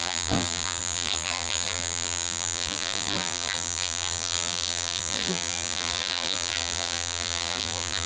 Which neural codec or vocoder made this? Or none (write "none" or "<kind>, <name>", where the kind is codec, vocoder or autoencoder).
vocoder, BigVGAN v2